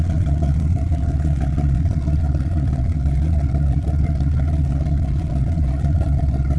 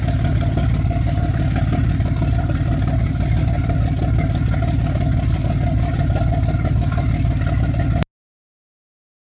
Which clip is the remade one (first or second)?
first